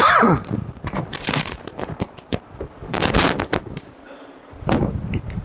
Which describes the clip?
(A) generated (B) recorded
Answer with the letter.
A